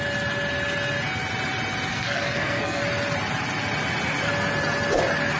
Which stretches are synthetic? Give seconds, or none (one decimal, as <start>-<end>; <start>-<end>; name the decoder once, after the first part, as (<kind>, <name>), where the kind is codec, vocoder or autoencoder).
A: 1.9-2.8 (codec, SNAC)